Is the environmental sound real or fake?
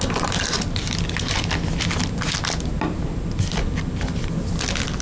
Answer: real